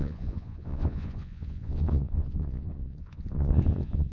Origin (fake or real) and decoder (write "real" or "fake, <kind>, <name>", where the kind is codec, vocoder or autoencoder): fake, vocoder, Vocos